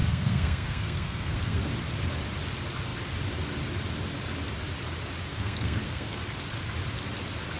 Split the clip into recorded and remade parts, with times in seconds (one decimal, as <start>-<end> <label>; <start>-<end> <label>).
0.0-1.7 remade; 1.7-5.3 recorded; 5.3-6.2 remade; 6.2-7.6 recorded